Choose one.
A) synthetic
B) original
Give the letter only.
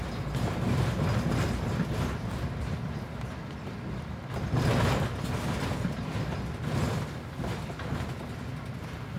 B